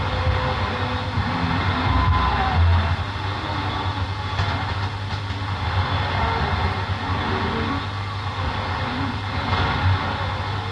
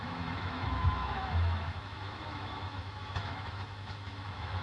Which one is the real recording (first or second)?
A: first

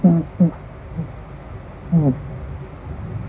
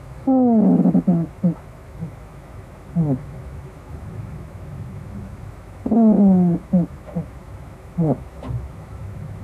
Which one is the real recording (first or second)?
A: first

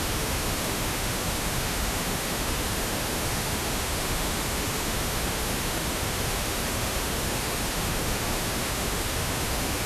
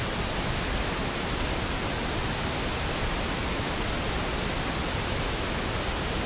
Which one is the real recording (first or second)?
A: second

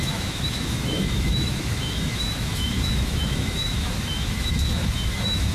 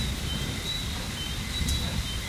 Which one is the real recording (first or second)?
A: second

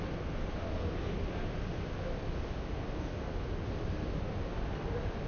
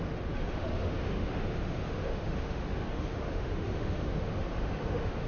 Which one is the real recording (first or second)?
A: first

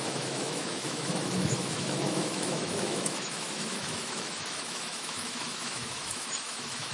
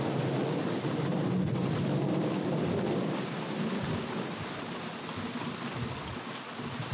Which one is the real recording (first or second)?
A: second